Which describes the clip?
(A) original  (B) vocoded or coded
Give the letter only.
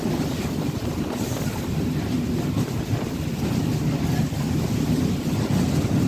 A